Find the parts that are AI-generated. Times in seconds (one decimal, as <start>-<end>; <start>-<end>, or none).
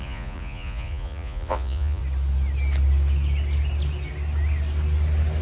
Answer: 0.0-2.0